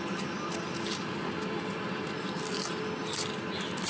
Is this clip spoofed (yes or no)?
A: no